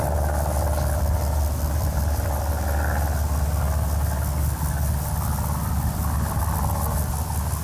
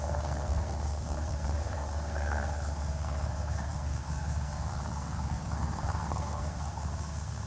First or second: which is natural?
first